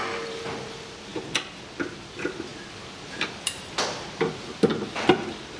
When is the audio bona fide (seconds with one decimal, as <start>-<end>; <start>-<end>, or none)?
1.1-2.0; 2.5-3.0; 4.7-5.6